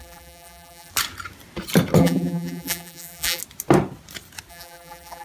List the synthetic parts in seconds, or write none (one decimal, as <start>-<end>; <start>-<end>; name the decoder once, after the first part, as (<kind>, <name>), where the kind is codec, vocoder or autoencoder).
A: 0.0-0.9 (vocoder, BigVGAN v2); 2.0-3.4; 4.5-5.2